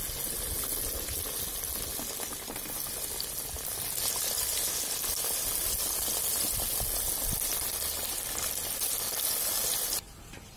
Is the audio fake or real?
real